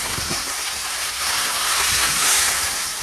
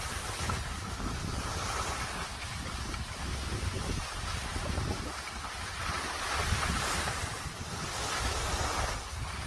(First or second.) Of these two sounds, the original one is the second